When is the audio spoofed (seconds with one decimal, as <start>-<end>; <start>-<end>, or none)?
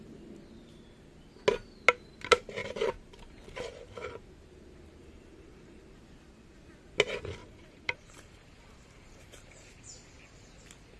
2.6-4.2; 5.0-5.8; 7.4-9.8